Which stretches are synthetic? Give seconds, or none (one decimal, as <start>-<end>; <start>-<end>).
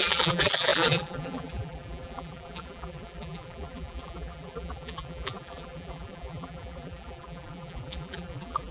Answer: 0.0-8.7